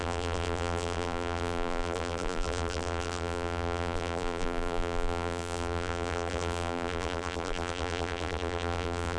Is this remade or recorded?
remade